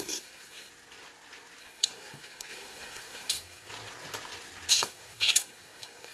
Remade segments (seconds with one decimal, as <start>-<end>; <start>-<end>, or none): 0.0-0.7; 1.6-3.7; 4.7-6.1